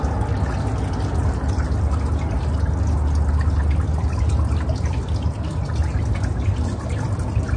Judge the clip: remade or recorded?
recorded